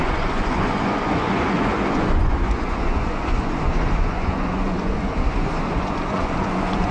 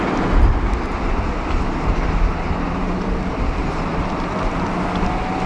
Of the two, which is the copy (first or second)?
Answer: first